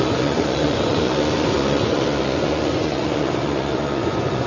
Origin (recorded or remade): remade